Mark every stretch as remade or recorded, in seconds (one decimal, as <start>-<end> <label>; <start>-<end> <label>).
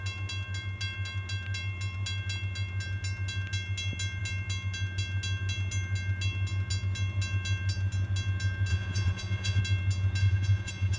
0.0-8.7 recorded; 8.7-9.6 remade; 9.6-10.2 recorded; 10.2-11.0 remade